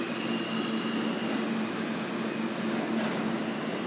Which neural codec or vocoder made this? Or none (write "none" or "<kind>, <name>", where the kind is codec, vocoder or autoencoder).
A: none